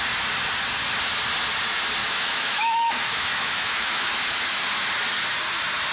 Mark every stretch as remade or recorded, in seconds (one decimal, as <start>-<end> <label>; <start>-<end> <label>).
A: 0.0-2.0 recorded; 2.0-4.1 remade; 4.1-5.9 recorded